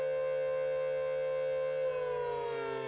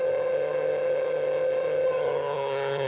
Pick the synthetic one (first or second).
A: second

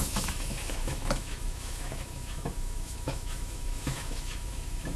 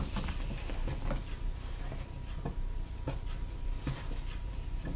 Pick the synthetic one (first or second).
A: first